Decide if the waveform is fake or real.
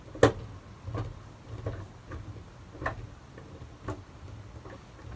real